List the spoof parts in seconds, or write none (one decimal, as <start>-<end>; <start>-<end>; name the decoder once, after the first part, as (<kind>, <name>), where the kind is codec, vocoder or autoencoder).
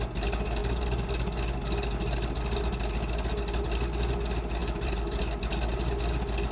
4.6-5.2 (vocoder, BigVGAN v2)